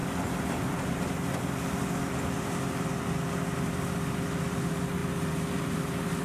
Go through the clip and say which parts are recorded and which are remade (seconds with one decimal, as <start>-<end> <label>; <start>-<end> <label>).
0.0-6.2 recorded